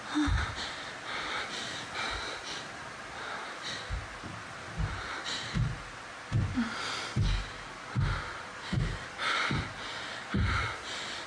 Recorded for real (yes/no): yes